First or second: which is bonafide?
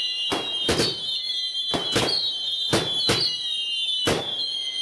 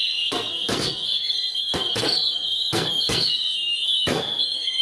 first